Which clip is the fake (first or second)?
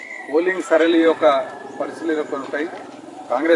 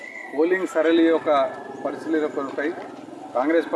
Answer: first